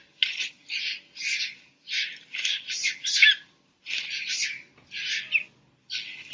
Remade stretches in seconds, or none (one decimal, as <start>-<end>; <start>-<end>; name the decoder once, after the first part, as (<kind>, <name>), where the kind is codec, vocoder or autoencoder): none